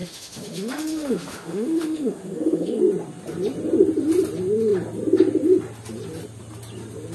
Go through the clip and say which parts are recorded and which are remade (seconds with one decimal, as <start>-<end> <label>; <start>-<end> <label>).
0.0-2.8 remade; 2.8-7.1 recorded